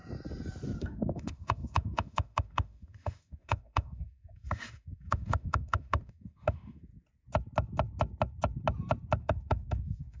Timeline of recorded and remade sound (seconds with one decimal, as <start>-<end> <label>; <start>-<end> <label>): 0.0-0.8 recorded; 0.8-6.9 remade; 6.9-9.2 recorded; 9.2-10.2 remade